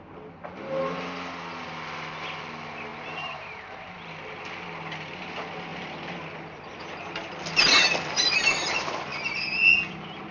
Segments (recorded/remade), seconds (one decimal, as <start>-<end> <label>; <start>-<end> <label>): 0.0-2.9 recorded; 2.9-4.1 remade; 4.1-10.3 recorded